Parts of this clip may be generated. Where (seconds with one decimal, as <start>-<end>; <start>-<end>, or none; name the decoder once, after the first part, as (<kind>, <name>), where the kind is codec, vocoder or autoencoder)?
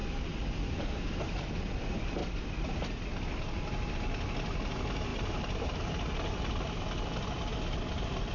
2.2-3.9 (vocoder, BigVGAN v2); 5.1-6.7